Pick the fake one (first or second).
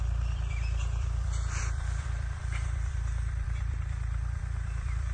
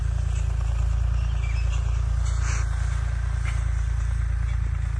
first